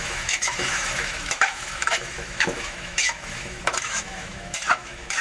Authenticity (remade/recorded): remade